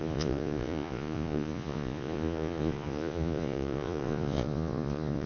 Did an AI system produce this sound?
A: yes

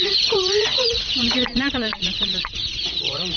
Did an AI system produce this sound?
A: yes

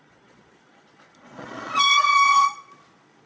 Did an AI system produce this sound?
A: yes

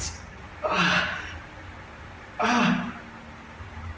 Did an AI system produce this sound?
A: no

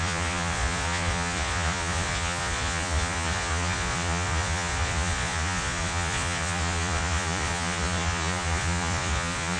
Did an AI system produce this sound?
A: yes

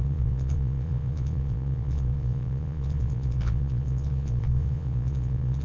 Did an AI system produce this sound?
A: yes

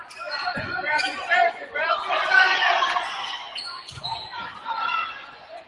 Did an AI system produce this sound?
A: yes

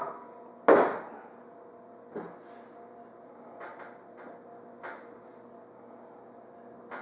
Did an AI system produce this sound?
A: no